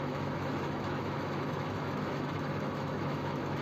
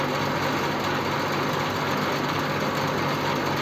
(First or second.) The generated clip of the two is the first